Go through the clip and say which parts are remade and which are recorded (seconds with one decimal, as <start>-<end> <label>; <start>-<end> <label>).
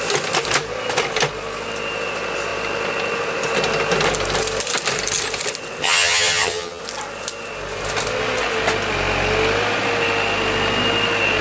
0.0-5.8 recorded; 5.8-6.8 remade; 6.8-11.4 recorded